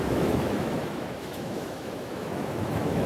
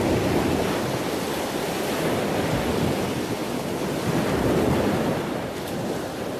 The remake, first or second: first